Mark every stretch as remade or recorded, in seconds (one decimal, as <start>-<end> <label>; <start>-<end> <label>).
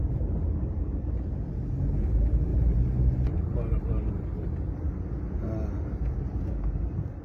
0.0-7.2 recorded